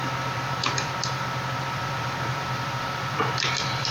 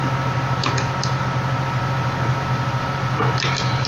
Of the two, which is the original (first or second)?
second